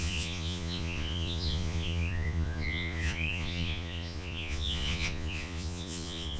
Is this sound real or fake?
fake